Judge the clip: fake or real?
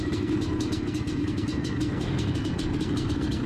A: fake